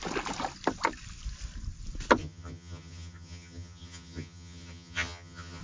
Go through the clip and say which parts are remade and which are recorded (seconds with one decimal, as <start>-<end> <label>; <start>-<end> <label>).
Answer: 0.0-2.2 recorded; 2.2-5.6 remade